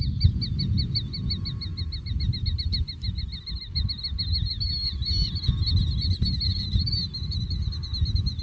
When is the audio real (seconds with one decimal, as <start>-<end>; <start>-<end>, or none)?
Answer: 0.0-6.5; 7.7-8.4